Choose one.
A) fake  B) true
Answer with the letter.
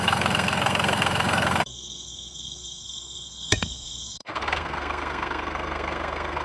A